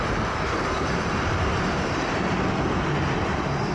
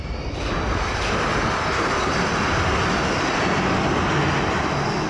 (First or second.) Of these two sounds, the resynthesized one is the first